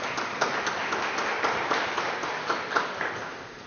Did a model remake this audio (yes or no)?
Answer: no